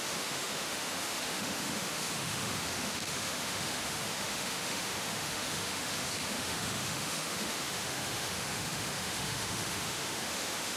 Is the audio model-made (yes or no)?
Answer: yes